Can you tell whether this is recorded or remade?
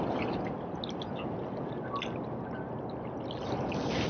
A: recorded